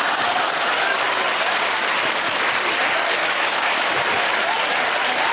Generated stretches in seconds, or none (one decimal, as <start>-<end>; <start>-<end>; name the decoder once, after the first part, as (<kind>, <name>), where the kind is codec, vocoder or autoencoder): 3.2-4.0 (autoencoder, DAC-VAE)

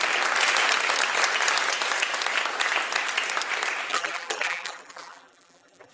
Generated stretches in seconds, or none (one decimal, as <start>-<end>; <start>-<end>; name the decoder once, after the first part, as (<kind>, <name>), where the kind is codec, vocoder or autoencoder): 3.9-5.9 (vocoder, BigVGAN v2)